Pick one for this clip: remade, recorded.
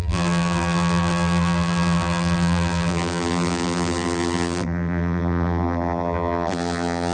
remade